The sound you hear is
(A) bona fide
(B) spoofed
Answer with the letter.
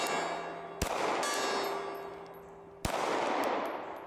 A